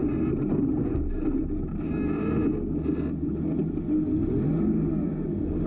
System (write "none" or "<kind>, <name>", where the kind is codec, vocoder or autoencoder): none